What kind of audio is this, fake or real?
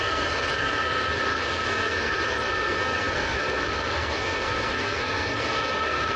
fake